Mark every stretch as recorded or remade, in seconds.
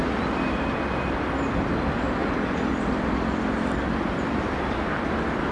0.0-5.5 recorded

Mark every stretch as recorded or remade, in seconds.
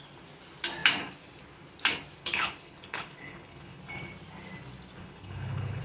0.0-2.2 recorded; 2.2-3.8 remade; 3.8-5.0 recorded; 5.0-5.8 remade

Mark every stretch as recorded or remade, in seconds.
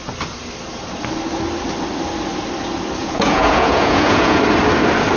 0.0-3.0 recorded; 3.0-4.4 remade; 4.4-5.2 recorded